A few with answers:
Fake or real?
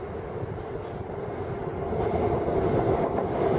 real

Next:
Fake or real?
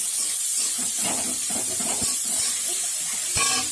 real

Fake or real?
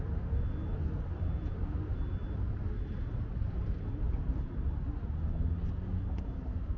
real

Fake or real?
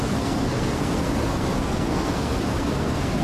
fake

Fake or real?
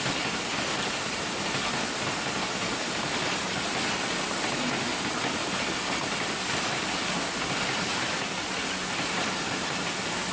real